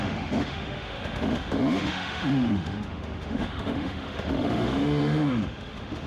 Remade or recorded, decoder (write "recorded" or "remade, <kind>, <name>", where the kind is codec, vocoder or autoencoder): remade, autoencoder, DAC-VAE